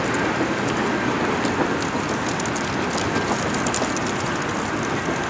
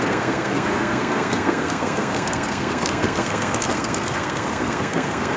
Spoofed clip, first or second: second